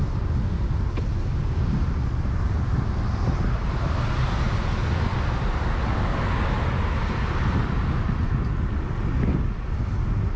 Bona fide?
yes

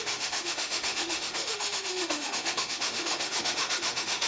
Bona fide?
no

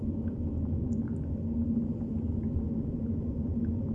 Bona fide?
yes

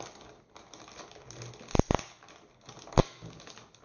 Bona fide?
yes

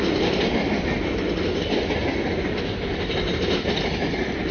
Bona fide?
yes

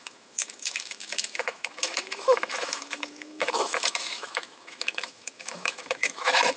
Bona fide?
no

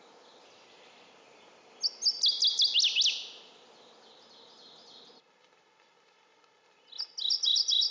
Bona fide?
yes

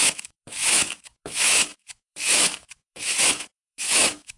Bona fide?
no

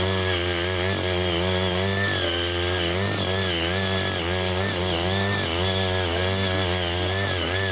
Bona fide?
yes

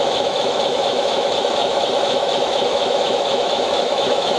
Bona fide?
no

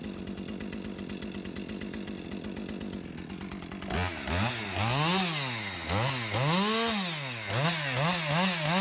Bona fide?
yes